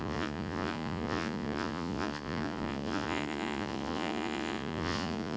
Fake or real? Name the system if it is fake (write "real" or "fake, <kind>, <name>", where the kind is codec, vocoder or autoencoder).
fake, vocoder, Vocos